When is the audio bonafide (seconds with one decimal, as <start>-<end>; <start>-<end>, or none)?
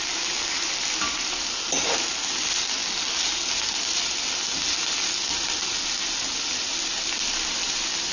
0.0-8.1